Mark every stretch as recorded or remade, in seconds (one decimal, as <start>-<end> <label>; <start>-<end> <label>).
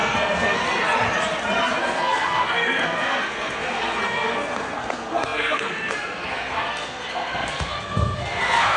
0.0-0.6 remade; 0.6-1.8 recorded; 1.8-8.8 remade